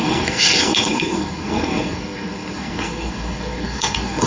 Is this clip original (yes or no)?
no